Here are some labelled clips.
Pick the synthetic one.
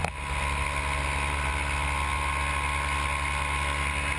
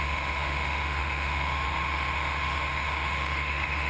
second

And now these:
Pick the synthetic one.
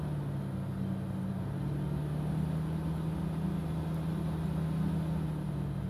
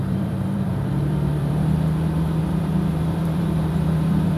second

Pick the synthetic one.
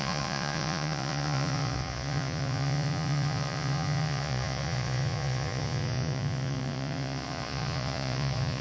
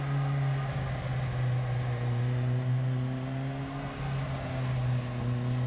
first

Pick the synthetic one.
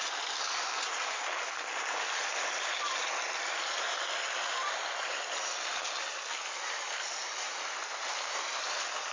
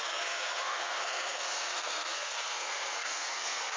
second